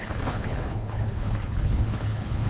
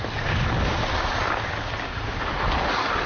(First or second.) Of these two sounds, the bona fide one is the second